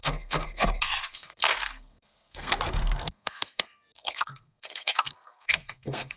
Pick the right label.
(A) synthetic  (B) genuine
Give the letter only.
A